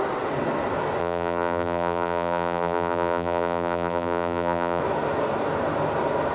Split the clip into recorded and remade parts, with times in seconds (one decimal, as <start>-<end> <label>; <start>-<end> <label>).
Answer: 0.0-1.0 recorded; 1.0-4.8 remade; 4.8-6.3 recorded